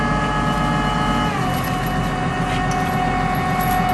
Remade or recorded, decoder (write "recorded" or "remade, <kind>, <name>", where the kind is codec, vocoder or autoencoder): recorded